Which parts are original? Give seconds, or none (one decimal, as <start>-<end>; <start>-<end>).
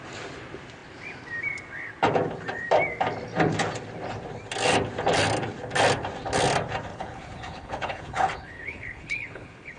0.0-6.9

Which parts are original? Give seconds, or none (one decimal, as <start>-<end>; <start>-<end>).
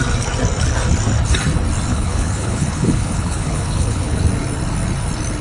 0.0-1.9; 4.2-5.4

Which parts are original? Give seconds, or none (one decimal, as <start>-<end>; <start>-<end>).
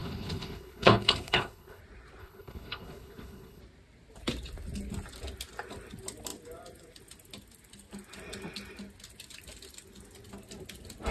1.8-2.2; 3.6-11.1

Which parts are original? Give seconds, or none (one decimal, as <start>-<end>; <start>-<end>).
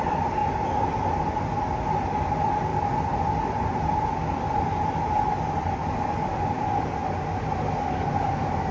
0.0-8.7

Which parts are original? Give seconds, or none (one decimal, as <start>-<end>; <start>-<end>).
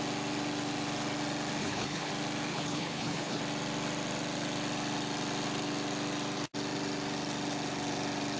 0.0-1.6; 2.1-2.5; 3.4-8.4